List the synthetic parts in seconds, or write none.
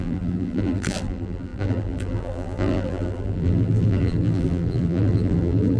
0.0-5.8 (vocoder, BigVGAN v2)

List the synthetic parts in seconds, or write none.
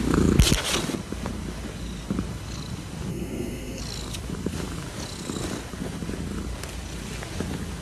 3.1-3.8 (codec, SNAC)